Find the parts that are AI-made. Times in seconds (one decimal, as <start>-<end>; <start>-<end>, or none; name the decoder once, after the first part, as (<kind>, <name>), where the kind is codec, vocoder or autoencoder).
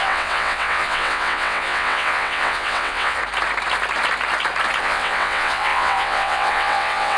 0.0-3.2 (vocoder, WaveNeXt); 4.8-7.2